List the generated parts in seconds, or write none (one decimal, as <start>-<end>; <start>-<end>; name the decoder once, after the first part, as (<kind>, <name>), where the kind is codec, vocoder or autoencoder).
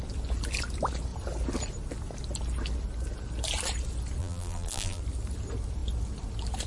4.2-5.0 (vocoder, BigVGAN v2)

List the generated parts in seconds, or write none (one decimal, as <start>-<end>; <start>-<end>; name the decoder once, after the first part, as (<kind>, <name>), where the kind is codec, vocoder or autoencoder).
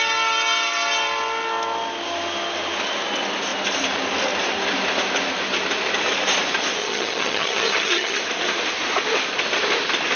6.8-8.2 (vocoder, HiFi-GAN)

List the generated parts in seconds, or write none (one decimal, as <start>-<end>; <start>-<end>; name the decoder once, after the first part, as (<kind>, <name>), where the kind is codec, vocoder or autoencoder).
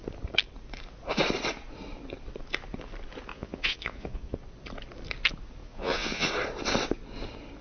3.3-4.4 (vocoder, Vocos); 5.6-6.3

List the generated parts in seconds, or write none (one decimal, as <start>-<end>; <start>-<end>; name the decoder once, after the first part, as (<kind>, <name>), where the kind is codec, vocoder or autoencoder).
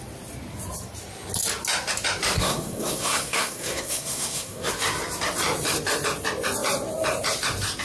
2.4-4.7 (codec, SNAC)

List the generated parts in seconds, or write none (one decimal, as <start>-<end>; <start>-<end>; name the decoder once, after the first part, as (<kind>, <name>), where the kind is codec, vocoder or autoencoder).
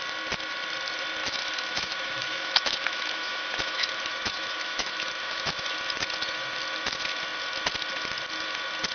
1.2-5.7 (autoencoder, DAC-VAE)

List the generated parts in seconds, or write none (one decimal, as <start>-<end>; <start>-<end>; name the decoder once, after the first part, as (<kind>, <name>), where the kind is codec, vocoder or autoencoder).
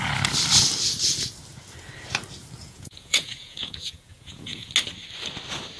2.6-4.7 (vocoder, Vocos)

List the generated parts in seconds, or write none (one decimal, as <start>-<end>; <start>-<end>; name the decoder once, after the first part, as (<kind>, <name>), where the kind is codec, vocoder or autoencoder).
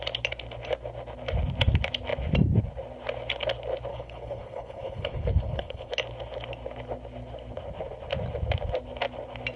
3.9-5.9 (codec, HILCodec)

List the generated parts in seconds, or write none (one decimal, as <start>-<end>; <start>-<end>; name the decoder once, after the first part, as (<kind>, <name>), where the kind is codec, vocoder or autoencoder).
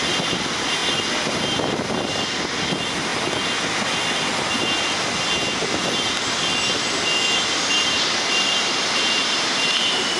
0.0-0.8 (vocoder, BigVGAN v2); 1.3-3.1; 7.9-10.2